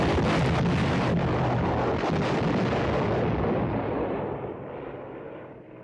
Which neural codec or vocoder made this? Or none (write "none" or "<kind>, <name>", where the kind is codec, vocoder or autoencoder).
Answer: none